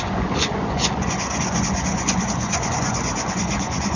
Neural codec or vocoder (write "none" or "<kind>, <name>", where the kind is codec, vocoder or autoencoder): vocoder, Vocos